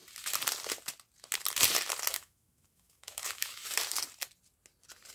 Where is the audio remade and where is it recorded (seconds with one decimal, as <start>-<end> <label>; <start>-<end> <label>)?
0.0-2.1 recorded; 2.1-3.6 remade; 3.6-5.1 recorded